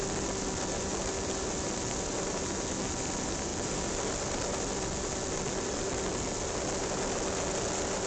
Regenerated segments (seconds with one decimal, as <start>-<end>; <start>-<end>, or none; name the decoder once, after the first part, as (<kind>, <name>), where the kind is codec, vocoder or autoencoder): none